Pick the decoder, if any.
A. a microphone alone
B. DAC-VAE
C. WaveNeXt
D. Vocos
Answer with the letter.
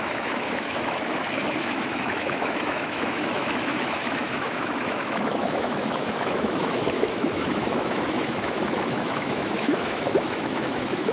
B